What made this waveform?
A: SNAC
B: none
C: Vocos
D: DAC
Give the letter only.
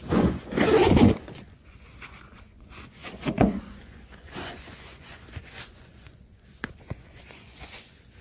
C